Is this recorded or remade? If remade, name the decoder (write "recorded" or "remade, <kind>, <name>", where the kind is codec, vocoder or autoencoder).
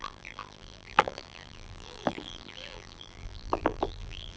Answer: remade, vocoder, BigVGAN v2